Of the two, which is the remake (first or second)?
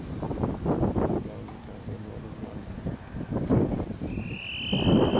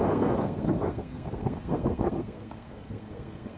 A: second